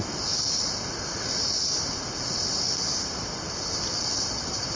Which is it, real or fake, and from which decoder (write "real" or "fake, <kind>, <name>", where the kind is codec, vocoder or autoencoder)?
real